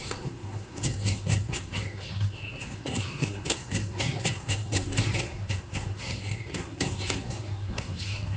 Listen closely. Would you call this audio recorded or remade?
remade